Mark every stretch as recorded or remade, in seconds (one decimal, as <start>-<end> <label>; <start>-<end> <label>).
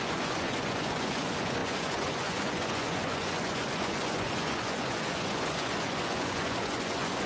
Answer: 0.0-7.3 remade